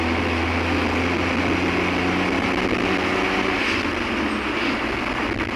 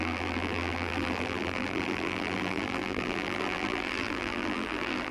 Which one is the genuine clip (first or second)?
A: first